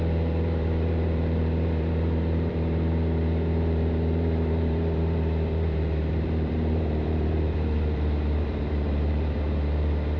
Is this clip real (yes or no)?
no